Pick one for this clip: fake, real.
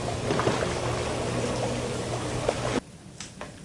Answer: real